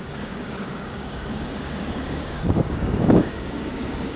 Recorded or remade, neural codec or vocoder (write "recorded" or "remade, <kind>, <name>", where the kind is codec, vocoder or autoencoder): remade, codec, DAC